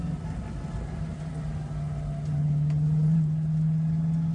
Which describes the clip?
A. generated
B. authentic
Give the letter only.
B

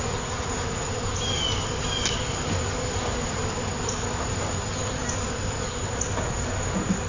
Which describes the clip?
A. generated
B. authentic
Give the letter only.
B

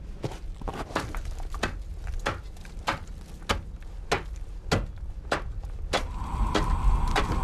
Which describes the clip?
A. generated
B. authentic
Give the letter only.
B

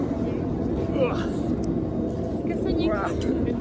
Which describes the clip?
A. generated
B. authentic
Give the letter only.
B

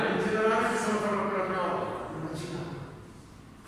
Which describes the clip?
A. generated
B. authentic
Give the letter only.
B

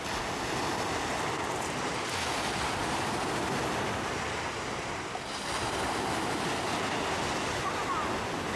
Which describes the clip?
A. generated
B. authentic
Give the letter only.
B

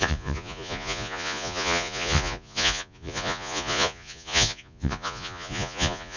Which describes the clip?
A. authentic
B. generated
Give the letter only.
B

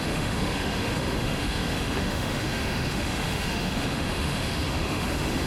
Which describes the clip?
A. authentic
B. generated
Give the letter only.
B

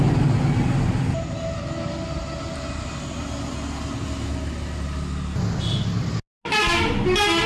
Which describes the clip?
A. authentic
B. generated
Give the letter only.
A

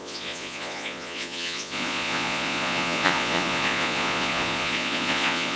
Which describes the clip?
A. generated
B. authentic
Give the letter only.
A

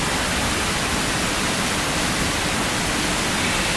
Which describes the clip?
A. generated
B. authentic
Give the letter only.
B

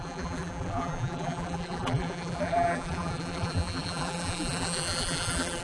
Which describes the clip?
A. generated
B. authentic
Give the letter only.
A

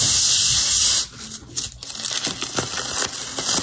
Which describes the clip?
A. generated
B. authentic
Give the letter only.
B